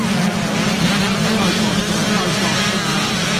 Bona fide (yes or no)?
yes